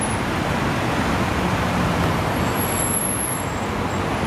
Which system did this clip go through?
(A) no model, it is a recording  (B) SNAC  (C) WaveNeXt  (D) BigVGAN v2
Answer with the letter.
A